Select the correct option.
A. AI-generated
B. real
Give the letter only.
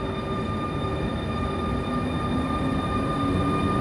B